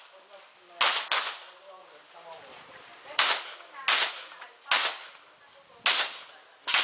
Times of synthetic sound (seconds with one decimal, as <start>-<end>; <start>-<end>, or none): 1.8-3.2